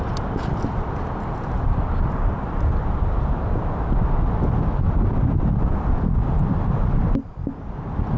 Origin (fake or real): real